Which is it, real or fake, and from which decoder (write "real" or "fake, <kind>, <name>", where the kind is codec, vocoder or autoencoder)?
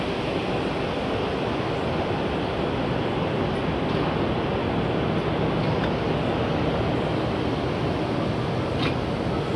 real